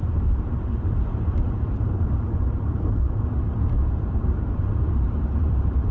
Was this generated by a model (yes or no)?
yes